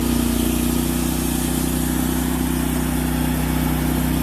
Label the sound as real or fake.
real